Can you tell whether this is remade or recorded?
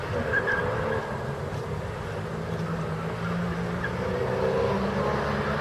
recorded